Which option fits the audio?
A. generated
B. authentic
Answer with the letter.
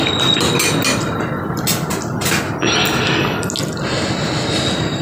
B